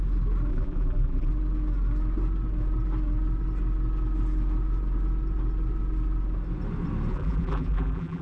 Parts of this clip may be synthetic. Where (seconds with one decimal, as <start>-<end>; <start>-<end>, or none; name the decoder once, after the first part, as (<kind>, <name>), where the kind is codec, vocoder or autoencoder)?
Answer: 0.5-1.3 (vocoder, BigVGAN v2); 7.1-8.2